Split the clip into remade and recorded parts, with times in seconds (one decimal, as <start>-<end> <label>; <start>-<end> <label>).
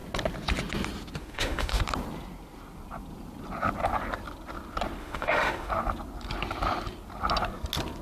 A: 0.0-1.2 recorded; 1.2-1.8 remade; 1.8-5.0 recorded; 5.0-5.7 remade; 5.7-8.0 recorded